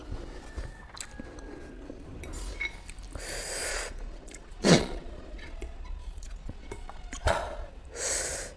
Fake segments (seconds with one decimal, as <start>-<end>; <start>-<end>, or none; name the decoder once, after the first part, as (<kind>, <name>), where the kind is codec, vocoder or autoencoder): 3.7-7.7 (vocoder, Vocos)